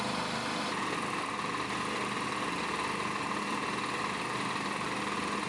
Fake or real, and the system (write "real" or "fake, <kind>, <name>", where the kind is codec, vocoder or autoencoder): real